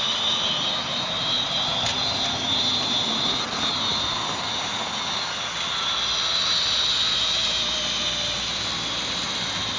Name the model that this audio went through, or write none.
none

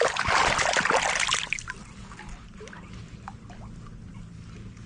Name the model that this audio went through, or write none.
none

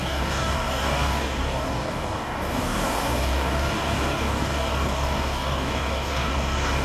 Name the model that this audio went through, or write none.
codec, DAC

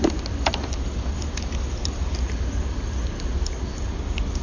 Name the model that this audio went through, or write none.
none